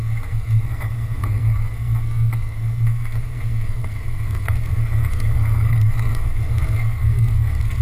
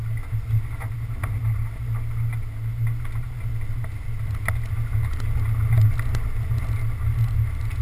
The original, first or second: second